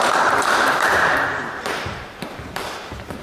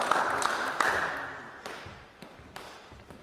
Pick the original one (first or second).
second